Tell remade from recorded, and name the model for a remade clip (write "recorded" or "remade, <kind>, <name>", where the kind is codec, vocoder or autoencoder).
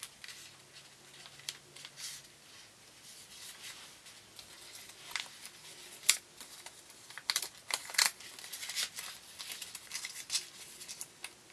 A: recorded